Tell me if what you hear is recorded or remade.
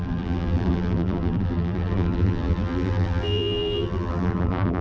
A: remade